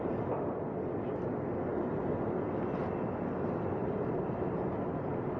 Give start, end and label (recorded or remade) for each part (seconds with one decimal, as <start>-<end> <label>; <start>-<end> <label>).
0.0-5.4 recorded